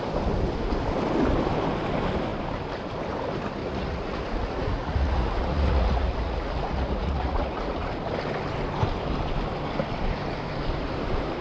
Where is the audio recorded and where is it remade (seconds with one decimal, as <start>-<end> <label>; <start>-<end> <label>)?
0.0-3.6 recorded; 3.6-7.9 remade; 7.9-11.4 recorded